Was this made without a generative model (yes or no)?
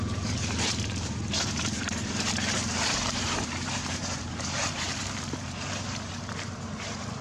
no